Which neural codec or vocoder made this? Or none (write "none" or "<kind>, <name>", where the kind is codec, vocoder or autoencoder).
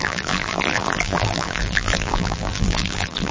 vocoder, BigVGAN v2